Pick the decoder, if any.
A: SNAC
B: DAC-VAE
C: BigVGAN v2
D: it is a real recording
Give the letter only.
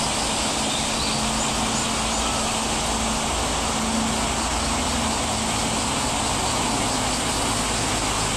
D